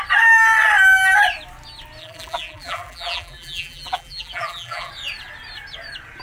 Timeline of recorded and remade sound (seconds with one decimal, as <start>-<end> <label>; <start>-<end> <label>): 0.0-2.0 recorded; 2.0-4.9 remade; 4.9-6.2 recorded